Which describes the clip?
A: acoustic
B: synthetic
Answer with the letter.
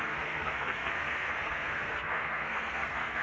B